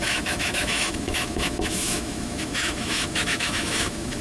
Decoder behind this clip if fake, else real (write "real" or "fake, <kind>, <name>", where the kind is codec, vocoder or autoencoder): fake, autoencoder, DAC-VAE